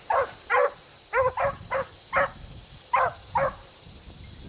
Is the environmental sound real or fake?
real